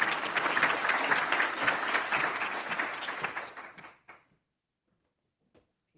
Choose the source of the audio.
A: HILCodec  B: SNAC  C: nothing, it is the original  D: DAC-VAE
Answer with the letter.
C